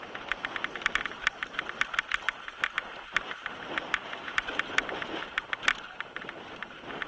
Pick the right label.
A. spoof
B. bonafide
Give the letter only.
B